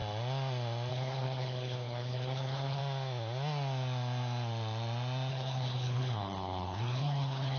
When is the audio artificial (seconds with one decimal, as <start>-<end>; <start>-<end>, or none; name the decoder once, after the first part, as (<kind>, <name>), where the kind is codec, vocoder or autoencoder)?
0.9-2.8 (codec, HILCodec); 5.3-7.6